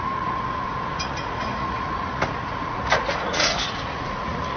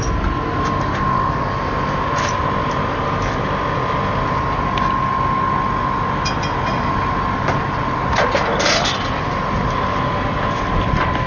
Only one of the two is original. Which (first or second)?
second